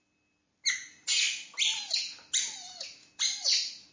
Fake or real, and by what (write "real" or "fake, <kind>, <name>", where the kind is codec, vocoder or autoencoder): real